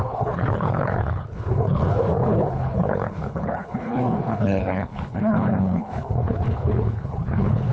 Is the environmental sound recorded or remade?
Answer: remade